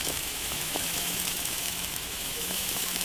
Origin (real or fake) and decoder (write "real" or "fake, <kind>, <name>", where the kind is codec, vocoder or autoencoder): fake, autoencoder, DAC-VAE